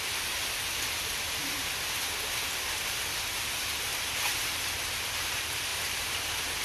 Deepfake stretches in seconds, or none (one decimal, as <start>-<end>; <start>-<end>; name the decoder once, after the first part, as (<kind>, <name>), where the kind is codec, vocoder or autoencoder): 0.0-3.0 (vocoder, BigVGAN v2); 3.8-6.6